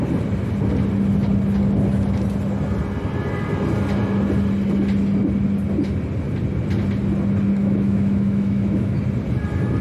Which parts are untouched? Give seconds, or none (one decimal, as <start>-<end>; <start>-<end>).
0.0-7.6; 9.0-9.8